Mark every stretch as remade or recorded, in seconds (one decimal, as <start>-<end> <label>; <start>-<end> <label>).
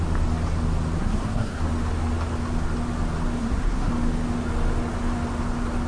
0.0-1.0 recorded; 1.0-1.6 remade; 1.6-3.4 recorded; 3.4-3.9 remade; 3.9-5.9 recorded